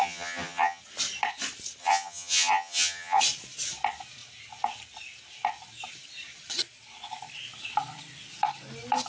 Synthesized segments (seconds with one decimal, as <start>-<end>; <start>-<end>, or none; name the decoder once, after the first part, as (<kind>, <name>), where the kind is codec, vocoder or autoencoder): 0.0-0.8 (vocoder, HiFi-GAN); 1.8-3.2